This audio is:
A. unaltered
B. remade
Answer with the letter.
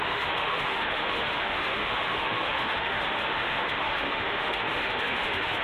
B